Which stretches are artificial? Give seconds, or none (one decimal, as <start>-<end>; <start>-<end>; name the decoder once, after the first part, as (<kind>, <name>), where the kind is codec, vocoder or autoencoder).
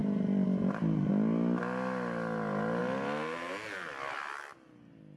0.0-1.1 (vocoder, BigVGAN v2)